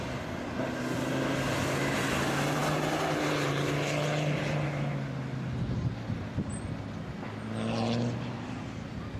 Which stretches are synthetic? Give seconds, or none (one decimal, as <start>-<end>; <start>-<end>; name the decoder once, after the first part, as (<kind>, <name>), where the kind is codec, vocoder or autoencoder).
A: none